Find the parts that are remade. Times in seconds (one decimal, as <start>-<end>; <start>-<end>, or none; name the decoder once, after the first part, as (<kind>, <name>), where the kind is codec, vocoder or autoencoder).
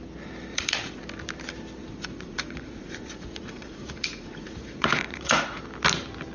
0.5-1.0 (vocoder, Vocos); 1.8-5.6